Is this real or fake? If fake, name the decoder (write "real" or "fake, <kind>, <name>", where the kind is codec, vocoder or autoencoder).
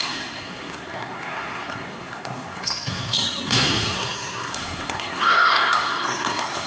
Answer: fake, codec, SNAC